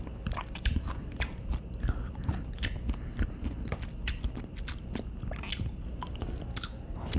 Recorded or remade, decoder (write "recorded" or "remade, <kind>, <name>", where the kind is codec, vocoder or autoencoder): recorded